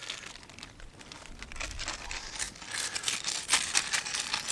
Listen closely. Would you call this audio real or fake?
real